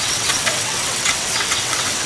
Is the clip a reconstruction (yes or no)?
yes